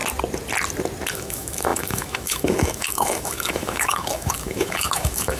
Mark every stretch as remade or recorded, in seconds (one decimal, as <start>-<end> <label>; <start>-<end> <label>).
0.0-1.1 recorded; 1.1-5.4 remade